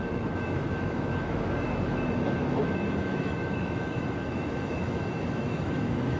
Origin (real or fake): fake